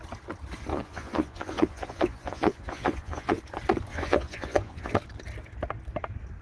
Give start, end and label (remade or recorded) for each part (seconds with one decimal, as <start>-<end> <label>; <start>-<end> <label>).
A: 0.0-0.7 recorded; 0.7-3.4 remade; 3.4-3.9 recorded; 3.9-4.9 remade; 4.9-6.4 recorded